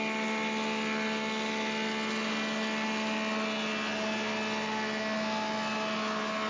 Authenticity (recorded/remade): recorded